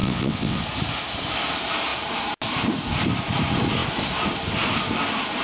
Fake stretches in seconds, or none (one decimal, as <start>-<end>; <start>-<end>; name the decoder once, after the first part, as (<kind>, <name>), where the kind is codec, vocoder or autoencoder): 0.0-0.6 (vocoder, WaveNeXt)